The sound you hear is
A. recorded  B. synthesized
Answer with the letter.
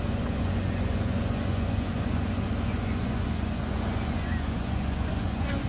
B